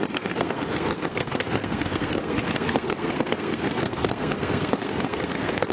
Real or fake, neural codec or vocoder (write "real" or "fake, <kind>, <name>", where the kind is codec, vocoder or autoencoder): fake, codec, SNAC